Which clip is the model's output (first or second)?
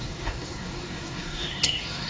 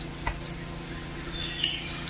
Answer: first